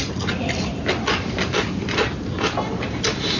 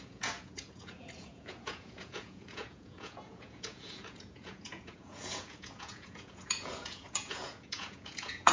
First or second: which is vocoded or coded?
second